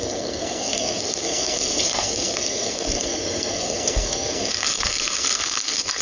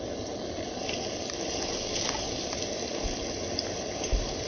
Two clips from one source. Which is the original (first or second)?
second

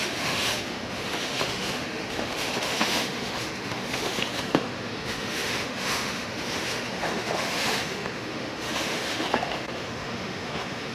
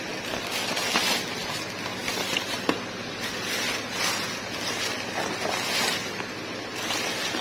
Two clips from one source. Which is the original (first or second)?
second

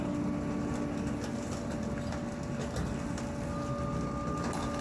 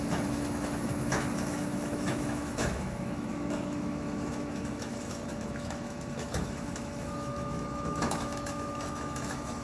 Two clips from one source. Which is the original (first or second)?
first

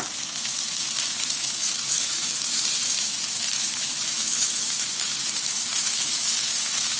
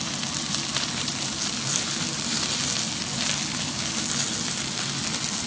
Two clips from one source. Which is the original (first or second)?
second